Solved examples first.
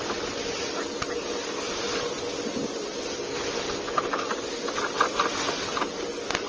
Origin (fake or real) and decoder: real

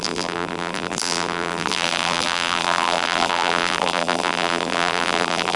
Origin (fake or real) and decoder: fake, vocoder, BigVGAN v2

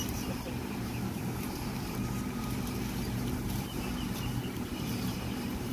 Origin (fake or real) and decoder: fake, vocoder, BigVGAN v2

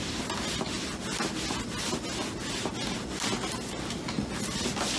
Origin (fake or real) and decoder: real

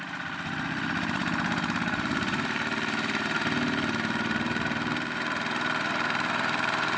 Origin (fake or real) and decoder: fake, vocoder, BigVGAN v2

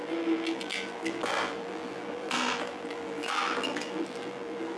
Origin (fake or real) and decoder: fake, vocoder, BigVGAN v2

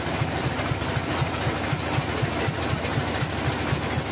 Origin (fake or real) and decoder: real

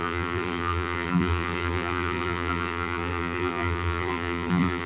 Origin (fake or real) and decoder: fake, vocoder, BigVGAN v2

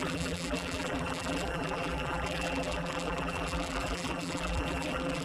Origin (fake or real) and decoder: fake, vocoder, BigVGAN v2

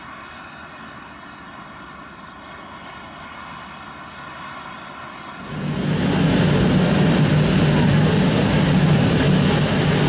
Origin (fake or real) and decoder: real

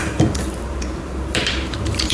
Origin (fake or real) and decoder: fake, vocoder, BigVGAN v2